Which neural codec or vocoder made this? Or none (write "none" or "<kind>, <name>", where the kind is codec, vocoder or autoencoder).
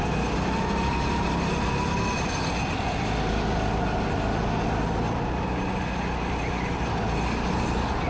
none